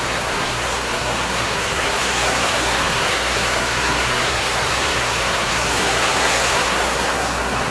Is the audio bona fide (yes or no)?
no